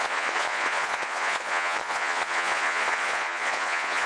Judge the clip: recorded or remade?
remade